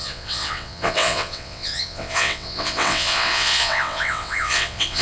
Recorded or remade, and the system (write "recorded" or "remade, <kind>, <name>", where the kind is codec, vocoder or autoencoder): remade, vocoder, WaveNeXt